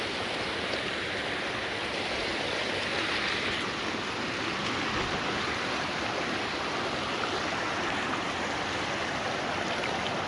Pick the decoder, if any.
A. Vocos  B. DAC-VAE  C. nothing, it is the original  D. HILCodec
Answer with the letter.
C